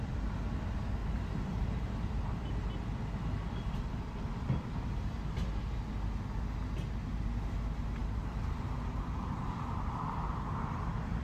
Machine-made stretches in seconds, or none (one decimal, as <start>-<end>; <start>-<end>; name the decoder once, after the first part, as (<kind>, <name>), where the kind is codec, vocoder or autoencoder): 1.0-2.5 (vocoder, BigVGAN v2); 8.0-11.2